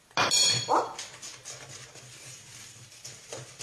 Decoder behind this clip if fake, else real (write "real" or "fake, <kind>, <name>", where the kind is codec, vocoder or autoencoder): real